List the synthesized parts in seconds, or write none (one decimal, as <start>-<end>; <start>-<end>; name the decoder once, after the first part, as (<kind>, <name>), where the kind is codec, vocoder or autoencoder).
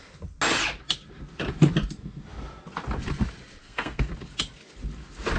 3.6-4.1 (codec, SNAC)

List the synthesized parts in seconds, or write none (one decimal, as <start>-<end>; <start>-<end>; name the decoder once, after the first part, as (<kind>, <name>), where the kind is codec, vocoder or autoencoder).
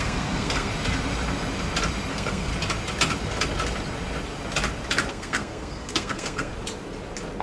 0.0-0.7 (codec, SNAC); 2.1-2.5; 5.1-6.5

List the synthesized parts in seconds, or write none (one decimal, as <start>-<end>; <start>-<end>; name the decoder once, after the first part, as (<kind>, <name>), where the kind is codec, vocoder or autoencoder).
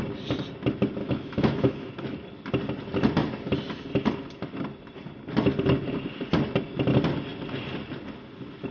1.0-1.9 (autoencoder, DAC-VAE)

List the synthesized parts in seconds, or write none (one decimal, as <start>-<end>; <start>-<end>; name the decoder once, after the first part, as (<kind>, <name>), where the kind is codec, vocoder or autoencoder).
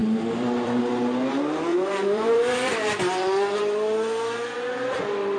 0.0-0.8 (vocoder, BigVGAN v2); 1.7-3.6